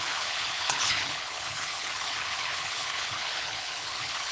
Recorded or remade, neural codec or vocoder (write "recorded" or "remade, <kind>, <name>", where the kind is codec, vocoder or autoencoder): remade, codec, HILCodec